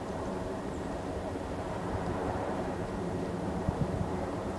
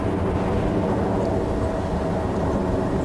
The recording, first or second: second